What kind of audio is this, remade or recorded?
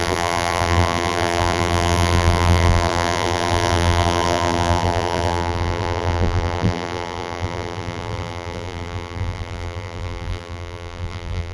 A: remade